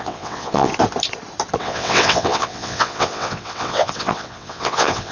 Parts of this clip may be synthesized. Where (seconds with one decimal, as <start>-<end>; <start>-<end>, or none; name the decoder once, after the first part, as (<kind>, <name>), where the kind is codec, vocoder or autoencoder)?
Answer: 0.0-0.7 (vocoder, WaveNeXt); 1.6-5.1